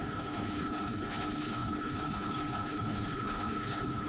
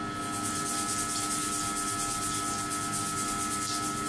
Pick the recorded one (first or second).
second